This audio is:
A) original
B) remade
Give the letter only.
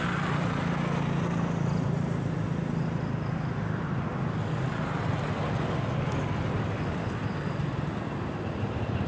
A